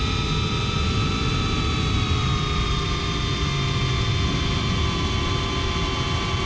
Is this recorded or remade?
recorded